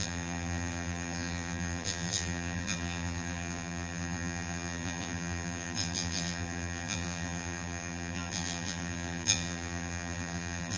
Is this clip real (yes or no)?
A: no